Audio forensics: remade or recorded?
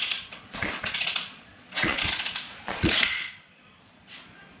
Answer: remade